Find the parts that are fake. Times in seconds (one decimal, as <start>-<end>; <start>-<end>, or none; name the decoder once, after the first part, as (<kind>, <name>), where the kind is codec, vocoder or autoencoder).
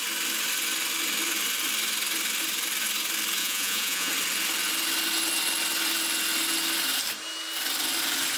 3.4-4.1 (vocoder, Vocos)